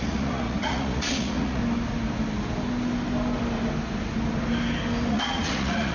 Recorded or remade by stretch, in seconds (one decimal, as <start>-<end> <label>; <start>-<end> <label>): 0.0-1.6 remade; 1.6-5.1 recorded; 5.1-5.9 remade